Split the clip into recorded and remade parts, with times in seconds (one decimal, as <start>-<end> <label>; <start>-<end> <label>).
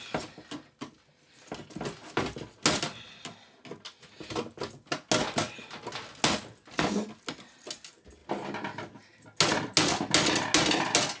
0.0-11.2 recorded